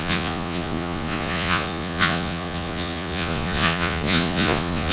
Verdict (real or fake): fake